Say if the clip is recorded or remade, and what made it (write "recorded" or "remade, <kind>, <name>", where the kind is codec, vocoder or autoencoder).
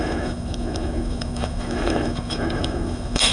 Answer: remade, autoencoder, DAC-VAE